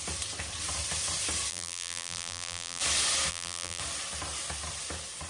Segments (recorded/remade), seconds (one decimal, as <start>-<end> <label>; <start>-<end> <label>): 0.0-1.5 recorded; 1.5-2.8 remade; 2.8-3.3 recorded; 3.3-3.8 remade; 3.8-5.3 recorded